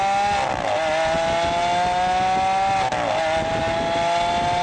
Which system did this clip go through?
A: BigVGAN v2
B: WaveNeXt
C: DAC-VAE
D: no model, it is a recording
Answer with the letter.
D